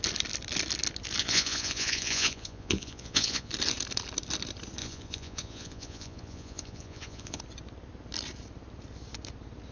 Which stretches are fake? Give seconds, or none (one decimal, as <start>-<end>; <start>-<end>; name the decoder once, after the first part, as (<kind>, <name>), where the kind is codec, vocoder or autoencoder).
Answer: 1.2-3.5 (vocoder, Vocos); 4.8-7.4